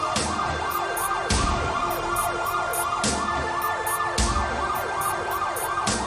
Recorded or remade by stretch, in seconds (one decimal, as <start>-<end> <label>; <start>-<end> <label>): 0.0-2.7 remade; 2.7-4.6 recorded; 4.6-6.1 remade